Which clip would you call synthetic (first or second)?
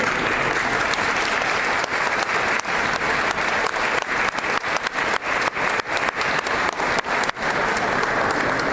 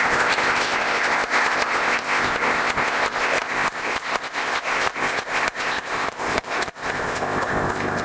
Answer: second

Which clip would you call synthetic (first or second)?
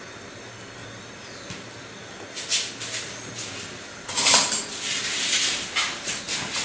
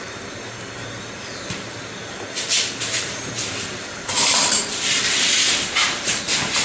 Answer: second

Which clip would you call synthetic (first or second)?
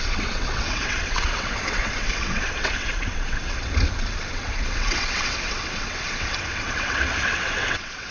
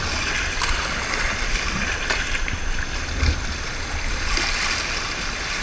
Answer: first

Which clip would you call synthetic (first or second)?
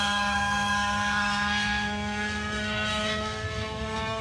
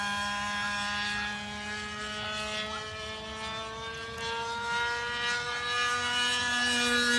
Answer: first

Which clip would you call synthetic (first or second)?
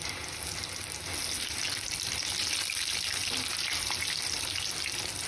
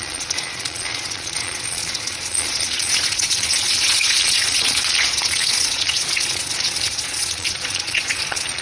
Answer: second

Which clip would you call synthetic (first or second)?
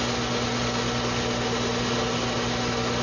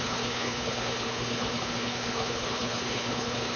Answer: second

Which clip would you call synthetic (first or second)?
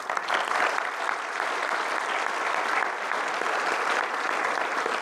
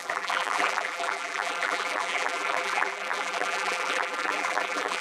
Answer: second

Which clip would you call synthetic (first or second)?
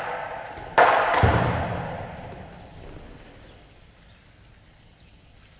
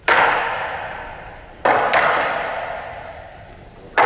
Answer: first